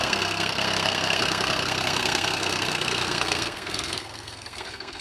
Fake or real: fake